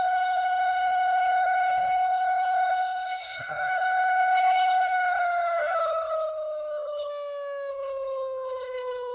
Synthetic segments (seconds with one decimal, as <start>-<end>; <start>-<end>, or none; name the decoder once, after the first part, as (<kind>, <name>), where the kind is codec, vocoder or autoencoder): 0.0-7.1 (codec, HILCodec); 7.7-9.1